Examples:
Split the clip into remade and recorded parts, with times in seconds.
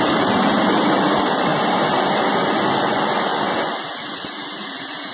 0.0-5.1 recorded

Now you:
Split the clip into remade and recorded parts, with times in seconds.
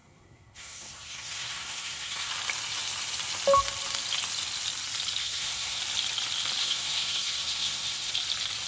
0.0-2.3 remade; 2.3-5.2 recorded; 5.2-5.8 remade; 5.8-6.6 recorded; 6.6-8.1 remade; 8.1-8.7 recorded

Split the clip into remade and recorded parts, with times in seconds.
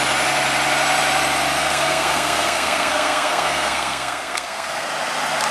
0.0-1.6 recorded; 1.6-4.9 remade; 4.9-5.5 recorded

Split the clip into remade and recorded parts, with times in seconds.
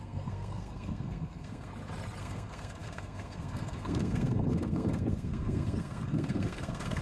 0.0-1.7 remade; 1.7-2.2 recorded; 2.2-7.0 remade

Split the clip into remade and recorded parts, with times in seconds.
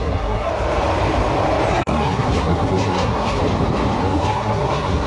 0.0-0.5 remade; 0.5-1.7 recorded; 1.7-3.4 remade; 3.4-4.0 recorded; 4.0-5.1 remade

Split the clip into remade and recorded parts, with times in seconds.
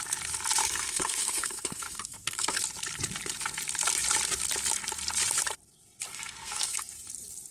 0.0-0.6 recorded; 0.6-2.6 remade; 2.6-6.1 recorded; 6.1-6.8 remade; 6.8-7.5 recorded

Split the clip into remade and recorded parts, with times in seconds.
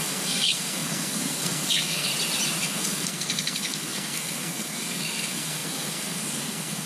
0.0-2.1 remade; 2.1-2.6 recorded; 2.6-6.9 remade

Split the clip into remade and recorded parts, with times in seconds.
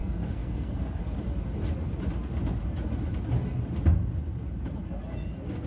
0.0-1.0 remade; 1.0-5.7 recorded